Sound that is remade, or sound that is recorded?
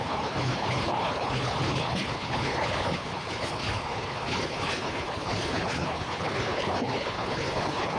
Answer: remade